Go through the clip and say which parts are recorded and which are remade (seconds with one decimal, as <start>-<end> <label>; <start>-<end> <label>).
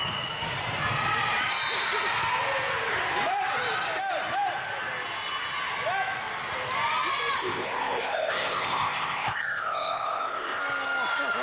0.0-7.4 recorded; 7.4-10.6 remade; 10.6-11.4 recorded